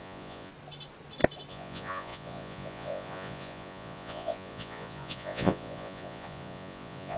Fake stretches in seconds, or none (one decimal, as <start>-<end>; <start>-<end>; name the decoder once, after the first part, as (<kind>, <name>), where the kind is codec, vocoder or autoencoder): 0.0-0.5 (vocoder, Vocos); 1.5-7.2